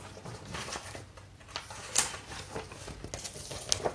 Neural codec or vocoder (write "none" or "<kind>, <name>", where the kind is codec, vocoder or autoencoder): none